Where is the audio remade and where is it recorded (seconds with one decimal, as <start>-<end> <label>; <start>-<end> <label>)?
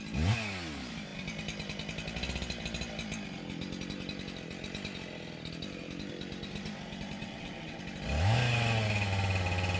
0.0-7.2 recorded; 7.2-7.8 remade; 7.8-9.8 recorded